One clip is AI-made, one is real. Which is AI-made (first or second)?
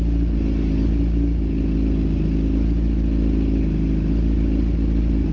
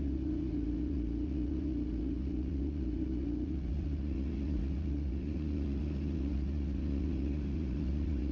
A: second